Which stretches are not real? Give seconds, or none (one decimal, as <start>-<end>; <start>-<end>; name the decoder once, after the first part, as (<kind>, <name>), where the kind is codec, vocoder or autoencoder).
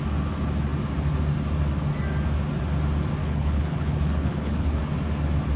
3.2-4.8 (codec, HILCodec)